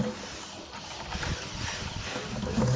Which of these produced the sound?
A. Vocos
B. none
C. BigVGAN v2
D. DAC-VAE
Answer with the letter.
B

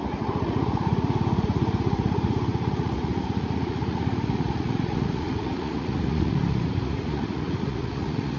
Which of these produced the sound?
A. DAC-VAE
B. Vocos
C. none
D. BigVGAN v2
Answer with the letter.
B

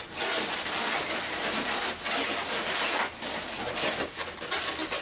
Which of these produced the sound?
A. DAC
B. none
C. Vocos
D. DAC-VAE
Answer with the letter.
B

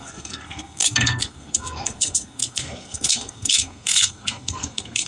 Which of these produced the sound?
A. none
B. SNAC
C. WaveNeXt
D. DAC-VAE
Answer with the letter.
B